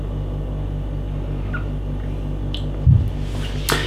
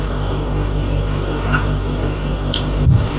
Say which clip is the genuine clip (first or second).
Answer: first